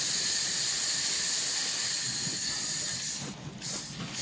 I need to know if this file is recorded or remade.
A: recorded